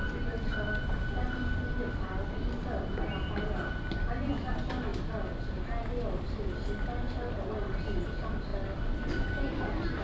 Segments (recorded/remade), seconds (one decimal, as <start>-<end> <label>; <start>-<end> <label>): 0.0-10.0 recorded